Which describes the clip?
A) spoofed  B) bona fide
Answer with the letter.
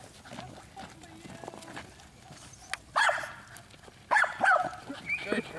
B